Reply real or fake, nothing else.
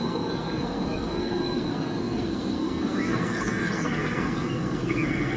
fake